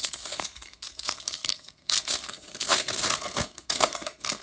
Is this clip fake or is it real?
fake